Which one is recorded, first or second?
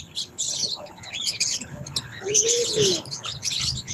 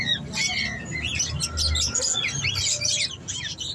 second